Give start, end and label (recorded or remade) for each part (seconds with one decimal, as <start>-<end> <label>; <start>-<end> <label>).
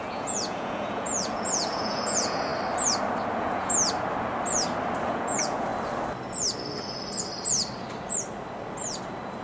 0.0-2.5 remade; 2.5-3.4 recorded; 3.4-3.8 remade; 3.8-5.0 recorded; 5.0-5.7 remade; 5.7-9.4 recorded